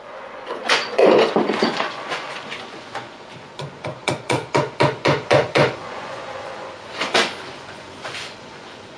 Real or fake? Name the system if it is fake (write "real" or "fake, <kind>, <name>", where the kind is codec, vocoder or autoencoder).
fake, vocoder, Vocos